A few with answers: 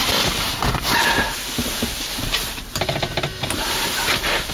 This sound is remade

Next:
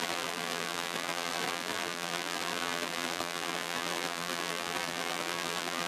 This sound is remade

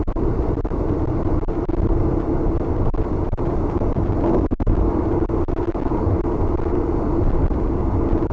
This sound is recorded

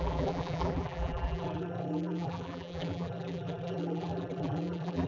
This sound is remade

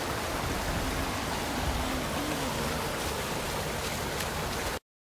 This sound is recorded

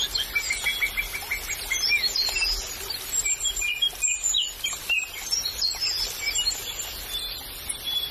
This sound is recorded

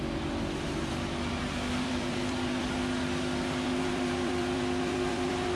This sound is remade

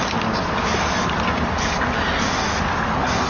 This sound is recorded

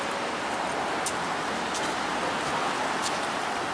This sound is recorded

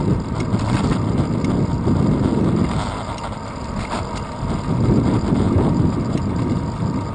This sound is recorded